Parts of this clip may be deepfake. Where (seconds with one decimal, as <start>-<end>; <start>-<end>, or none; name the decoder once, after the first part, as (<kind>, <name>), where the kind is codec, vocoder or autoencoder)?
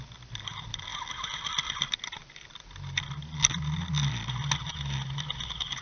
none